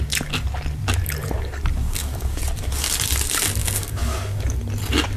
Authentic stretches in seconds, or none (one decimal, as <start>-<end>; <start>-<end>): 0.0-1.8; 2.4-3.6; 4.4-5.2

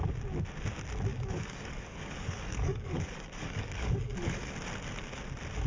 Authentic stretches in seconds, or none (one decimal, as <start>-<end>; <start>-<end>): 0.0-1.1; 4.5-5.7

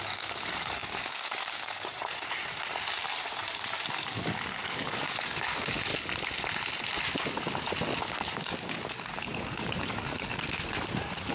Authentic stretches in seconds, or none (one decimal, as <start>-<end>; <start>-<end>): 1.9-3.9; 5.9-8.0